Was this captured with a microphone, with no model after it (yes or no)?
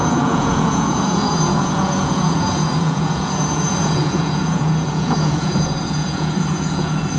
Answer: no